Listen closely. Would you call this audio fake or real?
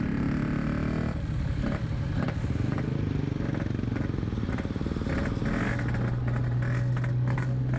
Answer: real